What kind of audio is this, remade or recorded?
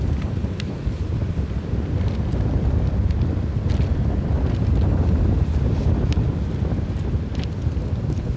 recorded